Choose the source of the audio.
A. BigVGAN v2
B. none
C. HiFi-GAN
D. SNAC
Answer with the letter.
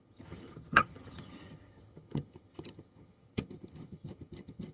C